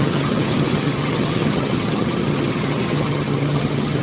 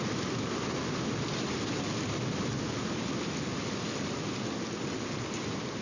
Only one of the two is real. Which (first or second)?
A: second